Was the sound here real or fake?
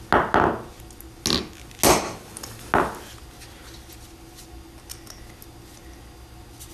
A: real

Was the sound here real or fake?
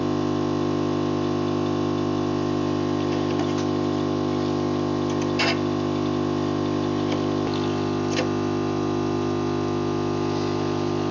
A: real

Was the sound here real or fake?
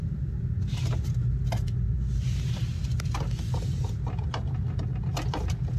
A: real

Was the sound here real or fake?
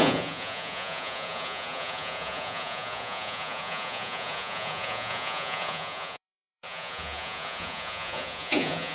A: fake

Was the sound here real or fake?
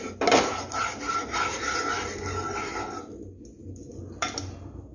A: real